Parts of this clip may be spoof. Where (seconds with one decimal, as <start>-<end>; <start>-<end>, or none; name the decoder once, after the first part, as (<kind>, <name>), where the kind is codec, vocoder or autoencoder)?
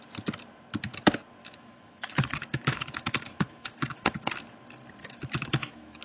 1.4-4.3 (autoencoder, DAC-VAE); 5.0-6.0